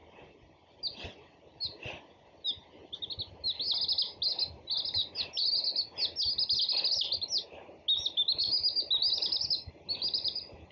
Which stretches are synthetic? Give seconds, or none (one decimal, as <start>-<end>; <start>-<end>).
none